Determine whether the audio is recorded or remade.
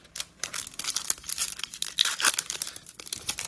recorded